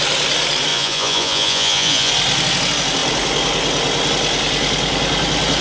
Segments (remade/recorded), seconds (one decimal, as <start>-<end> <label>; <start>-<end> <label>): 0.0-0.7 recorded; 0.7-2.1 remade; 2.1-5.6 recorded